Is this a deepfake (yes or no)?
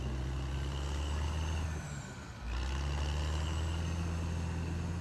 no